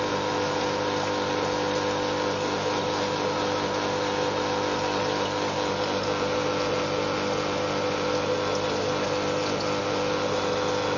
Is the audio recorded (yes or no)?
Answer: yes